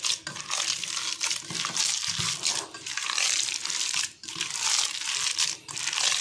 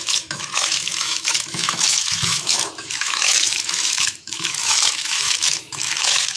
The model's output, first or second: second